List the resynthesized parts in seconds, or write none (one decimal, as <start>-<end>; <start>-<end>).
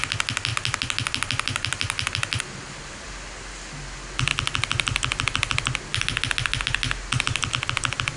none